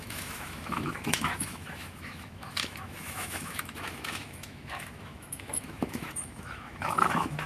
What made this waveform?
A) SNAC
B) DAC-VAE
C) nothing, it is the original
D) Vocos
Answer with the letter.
B